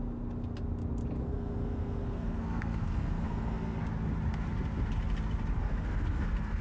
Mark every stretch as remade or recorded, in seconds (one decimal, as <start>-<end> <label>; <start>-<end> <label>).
0.0-1.2 recorded; 1.2-3.8 remade; 3.8-5.6 recorded; 5.6-6.6 remade